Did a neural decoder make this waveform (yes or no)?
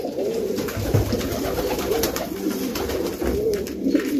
no